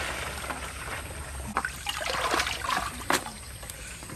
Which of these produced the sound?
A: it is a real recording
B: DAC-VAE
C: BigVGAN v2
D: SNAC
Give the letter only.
A